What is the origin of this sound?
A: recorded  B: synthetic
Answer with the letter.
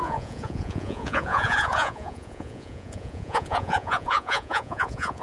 B